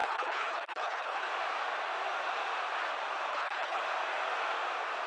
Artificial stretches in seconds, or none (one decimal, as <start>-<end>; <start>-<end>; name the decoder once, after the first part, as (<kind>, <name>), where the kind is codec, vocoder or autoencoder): 0.0-1.3 (codec, HILCodec); 3.3-3.8